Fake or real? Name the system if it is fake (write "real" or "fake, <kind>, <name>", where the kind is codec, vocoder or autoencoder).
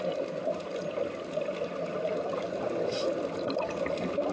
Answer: real